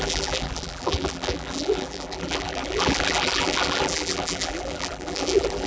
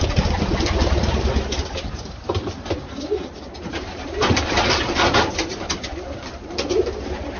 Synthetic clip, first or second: first